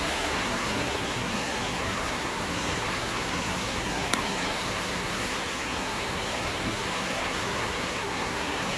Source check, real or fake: fake